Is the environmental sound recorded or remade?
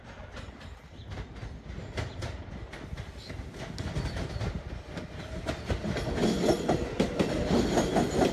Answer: recorded